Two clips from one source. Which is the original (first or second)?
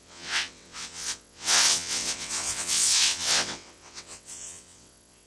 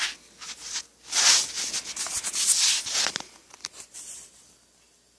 second